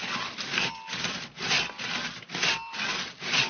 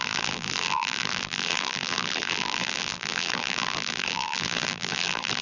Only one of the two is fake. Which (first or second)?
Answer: second